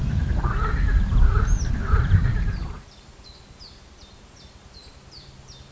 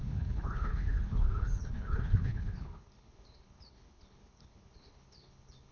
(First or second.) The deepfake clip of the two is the second